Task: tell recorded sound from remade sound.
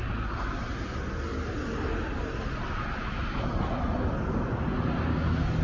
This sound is recorded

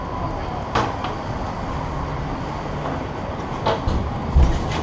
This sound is recorded